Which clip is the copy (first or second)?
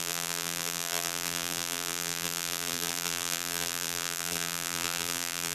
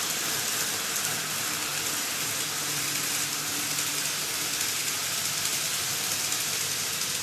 first